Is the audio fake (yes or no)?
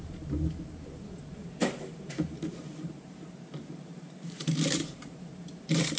yes